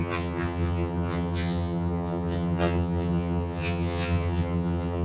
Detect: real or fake fake